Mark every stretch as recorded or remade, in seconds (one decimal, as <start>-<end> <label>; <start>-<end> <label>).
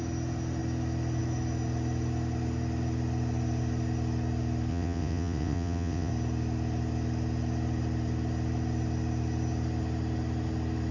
0.0-4.7 recorded; 4.7-6.1 remade; 6.1-10.9 recorded